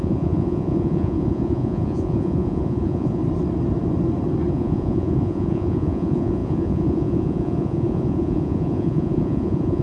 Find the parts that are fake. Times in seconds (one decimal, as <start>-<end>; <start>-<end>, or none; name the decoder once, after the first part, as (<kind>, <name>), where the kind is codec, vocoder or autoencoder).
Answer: 0.0-3.2 (vocoder, Vocos); 4.5-9.8